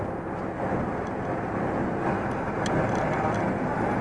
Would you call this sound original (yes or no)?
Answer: yes